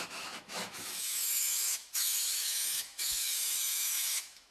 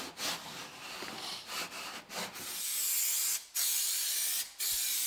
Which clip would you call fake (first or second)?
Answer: first